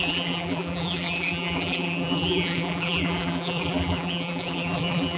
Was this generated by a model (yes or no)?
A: yes